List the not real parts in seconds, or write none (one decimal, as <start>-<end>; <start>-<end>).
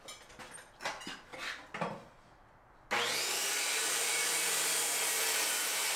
3.4-4.6